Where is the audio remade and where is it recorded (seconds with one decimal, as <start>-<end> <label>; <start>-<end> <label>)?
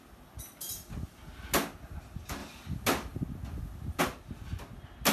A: 0.0-5.1 recorded